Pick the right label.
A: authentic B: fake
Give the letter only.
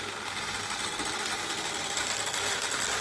A